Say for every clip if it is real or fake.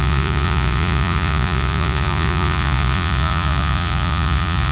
fake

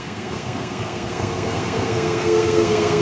fake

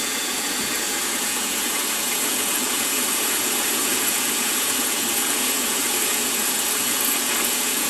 fake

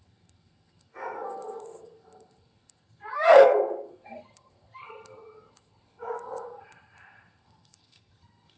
fake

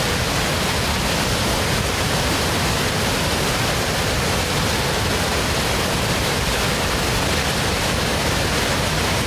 real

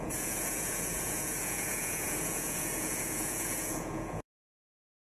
fake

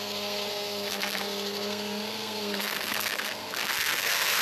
fake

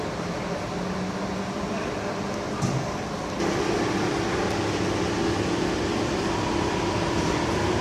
real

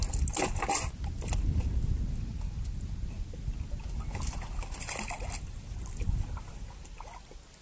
real